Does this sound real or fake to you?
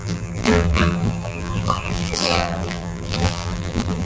fake